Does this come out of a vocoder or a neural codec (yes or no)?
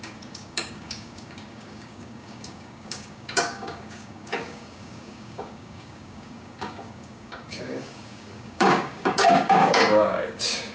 yes